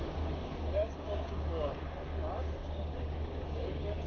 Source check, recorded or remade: remade